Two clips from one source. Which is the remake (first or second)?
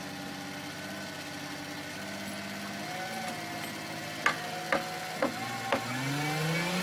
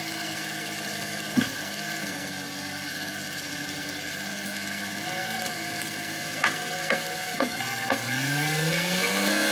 second